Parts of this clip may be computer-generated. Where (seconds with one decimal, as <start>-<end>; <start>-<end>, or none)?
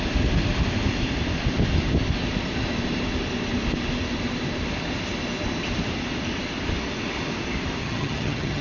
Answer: 7.8-8.6